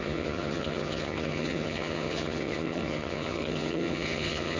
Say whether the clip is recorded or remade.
remade